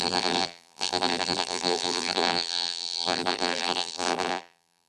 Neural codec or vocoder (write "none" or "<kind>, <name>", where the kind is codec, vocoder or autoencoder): vocoder, BigVGAN v2